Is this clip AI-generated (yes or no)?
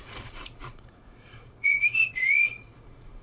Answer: yes